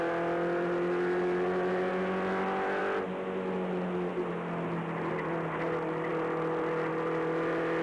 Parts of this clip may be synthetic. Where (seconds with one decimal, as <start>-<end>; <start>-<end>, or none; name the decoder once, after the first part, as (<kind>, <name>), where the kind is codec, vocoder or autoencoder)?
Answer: none